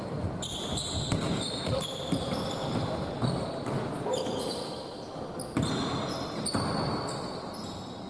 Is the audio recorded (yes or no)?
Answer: yes